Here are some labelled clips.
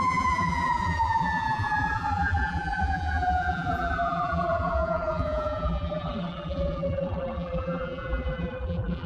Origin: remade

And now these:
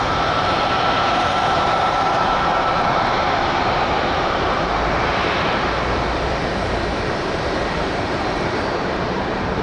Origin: remade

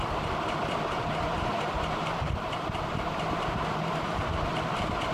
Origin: remade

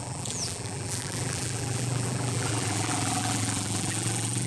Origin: remade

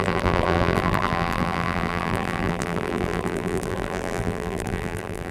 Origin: remade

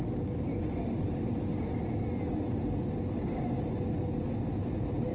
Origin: recorded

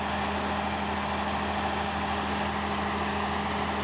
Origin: recorded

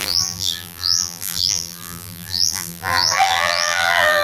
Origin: remade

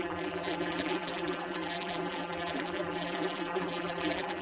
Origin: remade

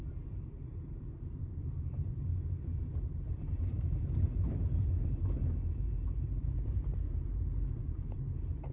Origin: remade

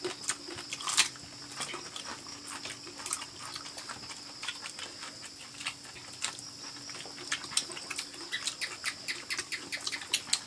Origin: recorded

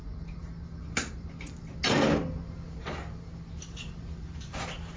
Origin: recorded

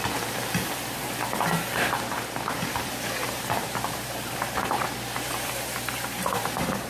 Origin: remade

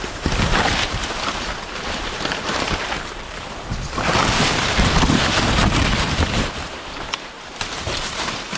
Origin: remade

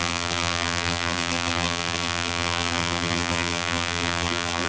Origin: remade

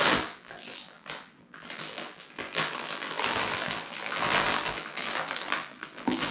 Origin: remade